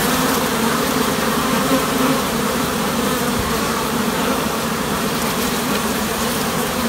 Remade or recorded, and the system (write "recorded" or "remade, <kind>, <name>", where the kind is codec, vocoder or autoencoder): remade, vocoder, BigVGAN v2